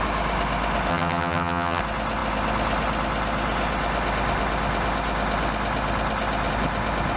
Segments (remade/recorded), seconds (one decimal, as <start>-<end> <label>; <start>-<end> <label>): 0.0-0.9 recorded; 0.9-1.8 remade; 1.8-7.2 recorded